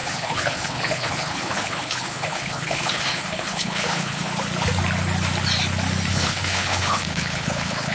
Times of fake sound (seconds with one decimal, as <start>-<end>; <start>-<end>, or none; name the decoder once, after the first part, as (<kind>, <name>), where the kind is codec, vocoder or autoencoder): 0.0-4.3 (codec, HILCodec); 6.1-7.9